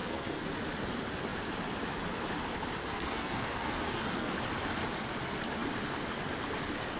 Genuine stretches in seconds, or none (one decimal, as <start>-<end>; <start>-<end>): 0.5-2.8; 4.3-7.0